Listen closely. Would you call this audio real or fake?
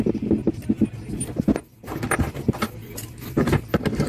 real